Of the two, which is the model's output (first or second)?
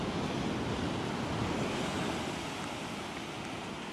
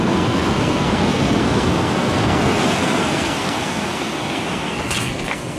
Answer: second